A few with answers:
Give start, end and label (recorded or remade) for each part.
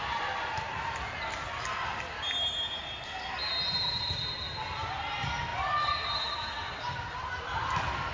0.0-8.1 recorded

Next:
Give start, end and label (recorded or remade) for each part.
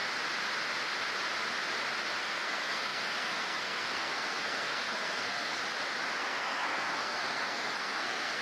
0.0-2.2 recorded; 2.2-5.6 remade; 5.6-6.2 recorded; 6.2-8.4 remade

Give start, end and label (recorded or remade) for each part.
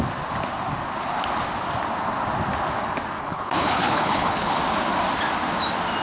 0.0-3.2 recorded; 3.2-4.6 remade; 4.6-6.0 recorded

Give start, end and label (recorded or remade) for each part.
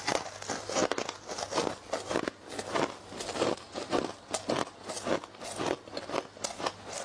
0.0-7.0 recorded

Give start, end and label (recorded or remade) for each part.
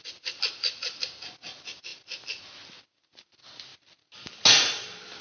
0.0-5.2 recorded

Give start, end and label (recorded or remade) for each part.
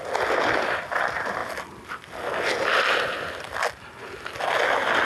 0.0-5.0 recorded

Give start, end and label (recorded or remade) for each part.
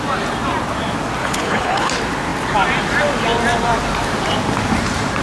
0.0-1.2 recorded; 1.2-1.9 remade; 1.9-5.2 recorded